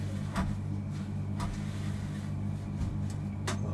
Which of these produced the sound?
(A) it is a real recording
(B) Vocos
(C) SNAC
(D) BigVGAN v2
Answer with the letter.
A